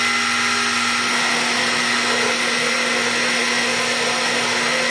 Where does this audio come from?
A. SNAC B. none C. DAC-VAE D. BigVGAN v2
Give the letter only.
B